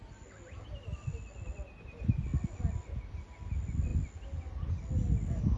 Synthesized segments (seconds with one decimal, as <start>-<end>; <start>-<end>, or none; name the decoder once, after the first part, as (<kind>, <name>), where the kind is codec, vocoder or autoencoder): none